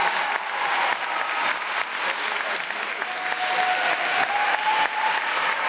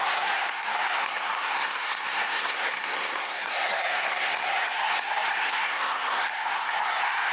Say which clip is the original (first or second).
first